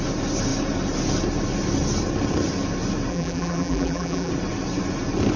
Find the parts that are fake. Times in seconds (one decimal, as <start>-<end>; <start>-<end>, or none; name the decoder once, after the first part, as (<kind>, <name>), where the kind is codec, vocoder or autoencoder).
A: 3.1-4.3 (vocoder, BigVGAN v2)